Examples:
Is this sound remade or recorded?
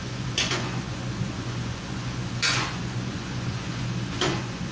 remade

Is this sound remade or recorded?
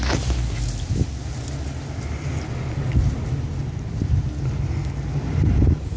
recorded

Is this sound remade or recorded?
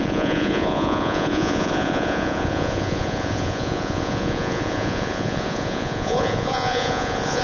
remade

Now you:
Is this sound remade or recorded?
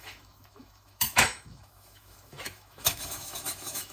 remade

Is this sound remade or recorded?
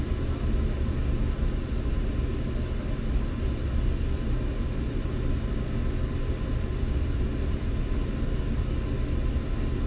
recorded